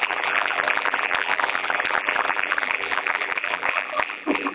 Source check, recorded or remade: remade